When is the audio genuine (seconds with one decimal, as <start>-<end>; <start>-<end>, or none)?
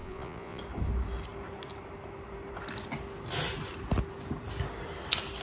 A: 0.6-5.4